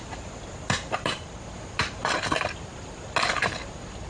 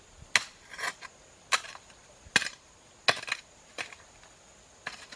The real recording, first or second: second